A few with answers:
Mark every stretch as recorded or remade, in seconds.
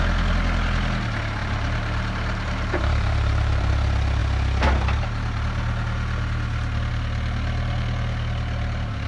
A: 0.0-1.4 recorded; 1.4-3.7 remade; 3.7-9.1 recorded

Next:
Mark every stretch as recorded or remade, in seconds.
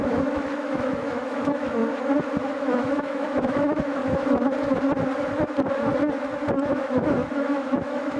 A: 0.0-1.8 remade; 1.8-2.5 recorded; 2.5-4.0 remade; 4.0-6.7 recorded; 6.7-8.2 remade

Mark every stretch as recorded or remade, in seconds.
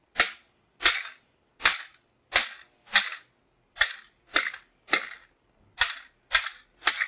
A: 0.0-7.1 recorded